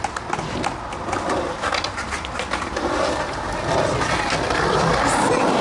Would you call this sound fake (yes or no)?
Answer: no